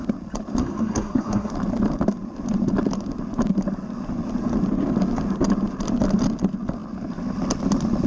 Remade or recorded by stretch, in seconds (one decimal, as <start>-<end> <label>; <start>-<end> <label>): 0.0-0.6 recorded; 0.6-1.5 remade; 1.5-8.1 recorded